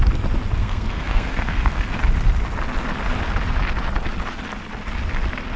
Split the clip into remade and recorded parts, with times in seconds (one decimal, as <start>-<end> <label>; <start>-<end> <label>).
0.0-0.6 recorded; 0.6-2.0 remade; 2.0-5.6 recorded